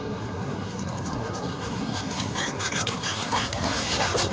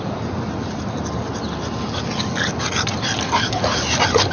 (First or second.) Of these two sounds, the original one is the second